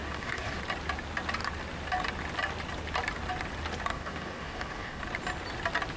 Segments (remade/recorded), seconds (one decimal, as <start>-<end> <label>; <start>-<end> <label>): 0.0-0.6 remade; 0.6-3.9 recorded; 3.9-5.0 remade; 5.0-6.0 recorded